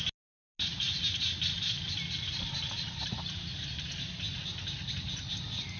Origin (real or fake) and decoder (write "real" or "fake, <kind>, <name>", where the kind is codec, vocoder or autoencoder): real